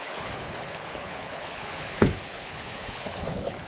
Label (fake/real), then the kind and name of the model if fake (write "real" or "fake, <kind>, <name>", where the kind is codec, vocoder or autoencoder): fake, codec, HILCodec